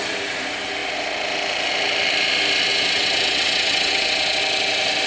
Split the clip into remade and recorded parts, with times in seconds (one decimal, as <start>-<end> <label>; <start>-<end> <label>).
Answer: 0.0-2.7 recorded; 2.7-4.4 remade; 4.4-5.1 recorded